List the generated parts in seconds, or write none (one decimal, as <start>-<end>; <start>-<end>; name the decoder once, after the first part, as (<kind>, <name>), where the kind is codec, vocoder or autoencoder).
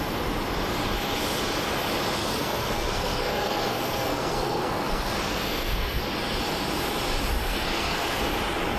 2.2-6.0 (codec, SNAC); 7.4-8.2